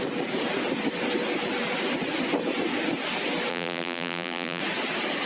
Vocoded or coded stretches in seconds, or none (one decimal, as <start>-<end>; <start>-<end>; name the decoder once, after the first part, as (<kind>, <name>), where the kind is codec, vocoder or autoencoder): 3.5-4.6 (vocoder, BigVGAN v2)